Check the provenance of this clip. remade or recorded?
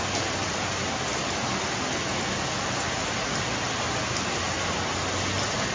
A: recorded